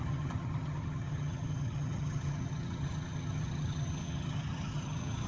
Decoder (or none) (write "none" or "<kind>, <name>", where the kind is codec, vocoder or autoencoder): vocoder, HiFi-GAN